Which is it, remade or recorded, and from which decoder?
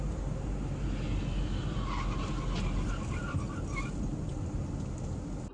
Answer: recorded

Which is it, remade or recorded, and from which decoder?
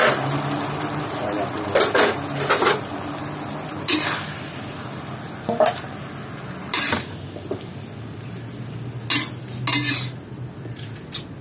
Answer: recorded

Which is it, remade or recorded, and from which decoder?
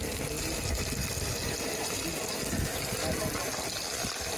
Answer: recorded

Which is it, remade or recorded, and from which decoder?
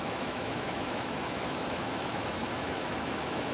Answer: remade, autoencoder, DAC-VAE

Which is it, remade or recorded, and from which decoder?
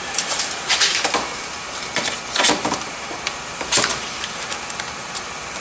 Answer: remade, vocoder, BigVGAN v2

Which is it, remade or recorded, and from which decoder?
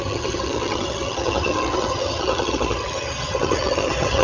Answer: remade, vocoder, HiFi-GAN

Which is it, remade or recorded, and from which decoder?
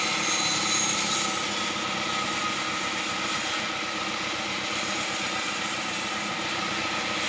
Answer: recorded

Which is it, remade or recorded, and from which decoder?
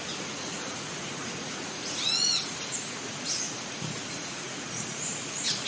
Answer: remade, vocoder, Vocos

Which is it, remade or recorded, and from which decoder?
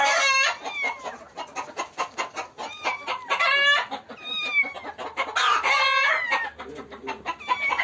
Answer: recorded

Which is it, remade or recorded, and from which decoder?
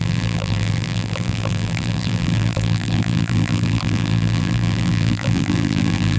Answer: remade, vocoder, BigVGAN v2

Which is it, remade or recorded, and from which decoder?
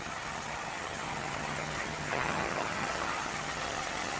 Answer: remade, vocoder, HiFi-GAN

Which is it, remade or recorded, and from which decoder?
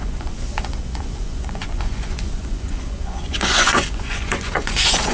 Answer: remade, vocoder, Vocos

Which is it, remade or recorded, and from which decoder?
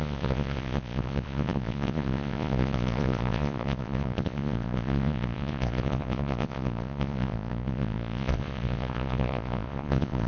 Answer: remade, vocoder, Vocos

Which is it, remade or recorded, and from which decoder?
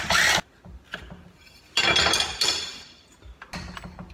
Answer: recorded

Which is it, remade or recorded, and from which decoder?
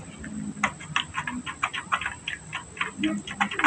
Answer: recorded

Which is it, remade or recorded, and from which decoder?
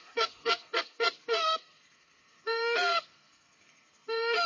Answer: remade, codec, SNAC